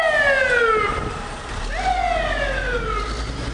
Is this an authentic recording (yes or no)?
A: yes